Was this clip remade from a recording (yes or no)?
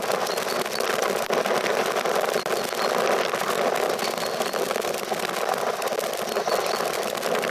no